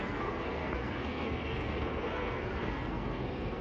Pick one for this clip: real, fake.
fake